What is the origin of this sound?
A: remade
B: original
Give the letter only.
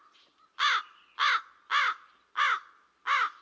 B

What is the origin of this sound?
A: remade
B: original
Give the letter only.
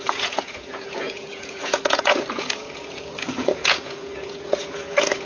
A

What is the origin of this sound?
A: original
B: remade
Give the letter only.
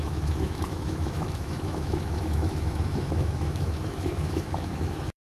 B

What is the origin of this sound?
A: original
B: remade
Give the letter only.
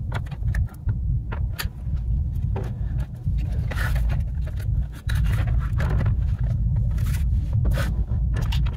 A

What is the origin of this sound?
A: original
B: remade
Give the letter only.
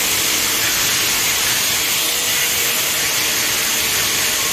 A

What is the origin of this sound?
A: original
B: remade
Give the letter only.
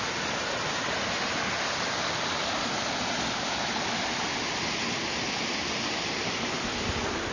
A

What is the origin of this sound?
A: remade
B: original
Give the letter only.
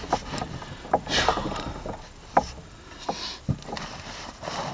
B